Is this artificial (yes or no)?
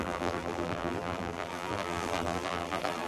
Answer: yes